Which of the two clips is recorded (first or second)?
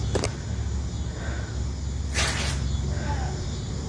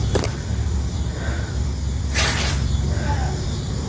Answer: first